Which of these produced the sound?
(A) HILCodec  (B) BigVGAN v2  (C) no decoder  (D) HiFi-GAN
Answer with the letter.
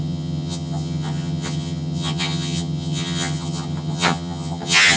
D